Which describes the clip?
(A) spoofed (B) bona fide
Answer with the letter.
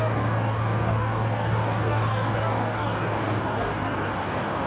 A